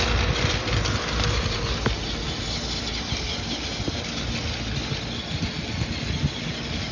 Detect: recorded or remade recorded